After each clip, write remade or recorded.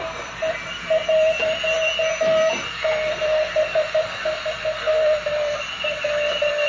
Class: remade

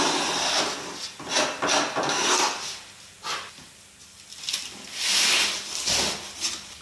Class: recorded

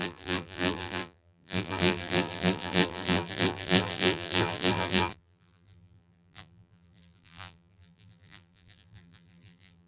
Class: remade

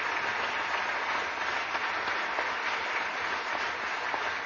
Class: recorded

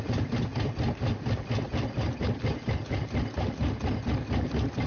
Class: recorded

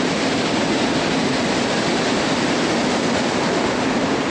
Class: recorded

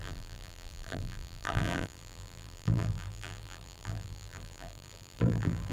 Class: remade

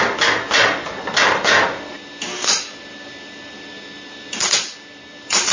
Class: recorded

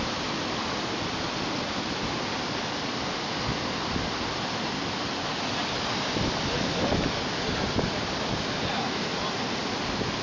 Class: recorded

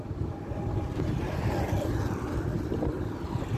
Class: recorded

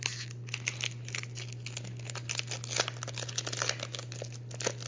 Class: recorded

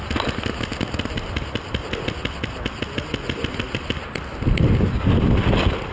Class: recorded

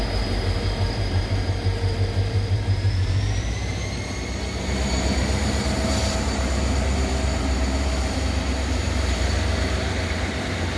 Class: remade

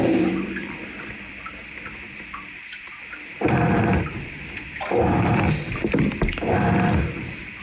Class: remade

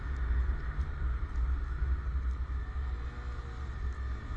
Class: recorded